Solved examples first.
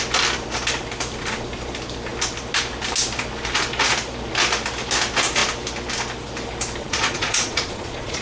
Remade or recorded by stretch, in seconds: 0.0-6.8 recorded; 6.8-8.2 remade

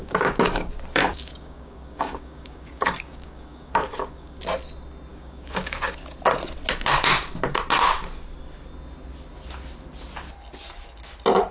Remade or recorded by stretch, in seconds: 0.0-0.7 remade; 0.7-1.1 recorded; 1.1-4.4 remade; 4.4-5.1 recorded; 5.1-6.0 remade; 6.0-11.5 recorded

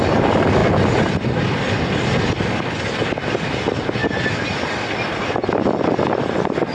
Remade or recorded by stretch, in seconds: 0.0-6.7 recorded

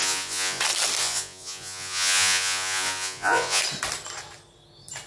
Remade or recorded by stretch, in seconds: 0.0-0.6 remade; 0.6-1.0 recorded; 1.0-3.6 remade; 3.6-5.1 recorded

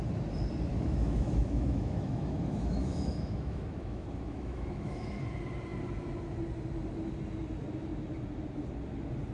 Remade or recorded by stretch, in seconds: 0.0-0.7 recorded; 0.7-5.2 remade; 5.2-9.3 recorded

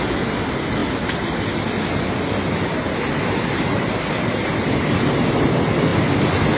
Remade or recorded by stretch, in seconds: 0.0-6.6 recorded